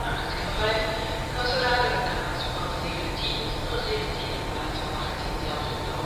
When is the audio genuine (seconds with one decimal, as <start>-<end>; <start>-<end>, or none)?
0.0-0.8; 1.6-2.3; 3.1-4.1